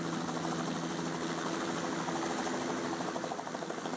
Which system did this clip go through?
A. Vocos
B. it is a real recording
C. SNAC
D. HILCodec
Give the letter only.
B